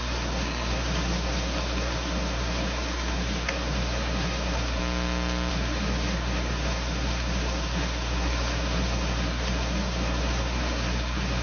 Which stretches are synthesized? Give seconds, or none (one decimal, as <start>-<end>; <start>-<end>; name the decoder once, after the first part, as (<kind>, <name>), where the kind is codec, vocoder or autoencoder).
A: 0.0-4.8 (codec, SNAC); 5.5-11.4